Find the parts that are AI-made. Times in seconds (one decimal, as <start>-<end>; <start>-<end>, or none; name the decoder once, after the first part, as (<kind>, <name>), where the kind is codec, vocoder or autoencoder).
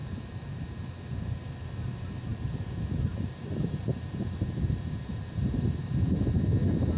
0.0-1.4 (vocoder, BigVGAN v2); 2.3-6.2